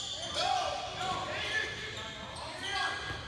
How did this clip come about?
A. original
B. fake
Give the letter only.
A